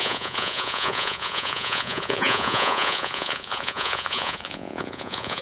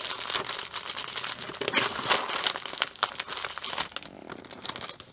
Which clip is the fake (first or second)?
first